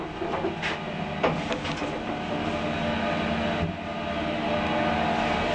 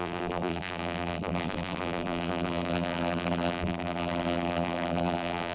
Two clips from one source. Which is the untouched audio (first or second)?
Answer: first